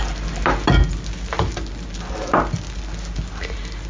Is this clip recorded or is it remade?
recorded